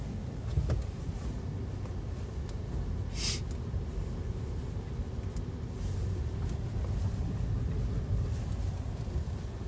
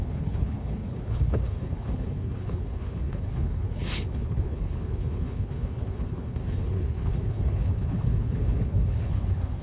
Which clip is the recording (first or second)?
first